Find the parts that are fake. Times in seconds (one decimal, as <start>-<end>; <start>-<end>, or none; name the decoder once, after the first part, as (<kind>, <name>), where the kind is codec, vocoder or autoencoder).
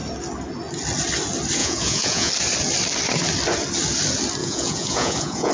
1.6-2.3 (vocoder, Vocos); 4.4-5.5